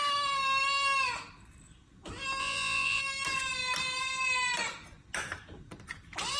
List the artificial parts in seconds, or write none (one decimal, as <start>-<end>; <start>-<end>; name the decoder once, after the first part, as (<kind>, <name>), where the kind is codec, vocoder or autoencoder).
2.4-3.0 (vocoder, Vocos)